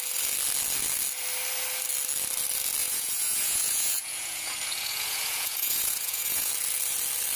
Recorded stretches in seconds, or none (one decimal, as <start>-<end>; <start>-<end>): 0.0-2.8; 6.5-7.4